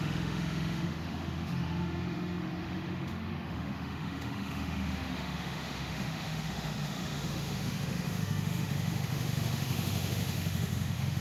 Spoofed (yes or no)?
yes